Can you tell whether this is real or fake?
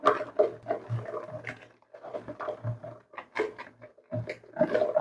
real